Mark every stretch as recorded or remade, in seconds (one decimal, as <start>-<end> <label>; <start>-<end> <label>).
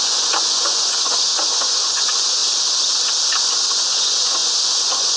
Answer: 0.0-2.4 remade; 2.4-3.7 recorded; 3.7-5.2 remade